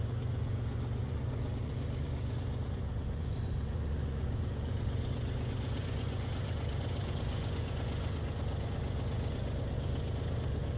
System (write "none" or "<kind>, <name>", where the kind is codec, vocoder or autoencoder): vocoder, Vocos